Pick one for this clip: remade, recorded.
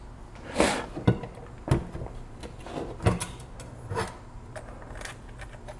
recorded